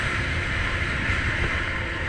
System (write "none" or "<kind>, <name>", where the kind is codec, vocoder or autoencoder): none